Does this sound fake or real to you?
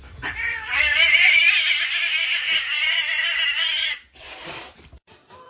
fake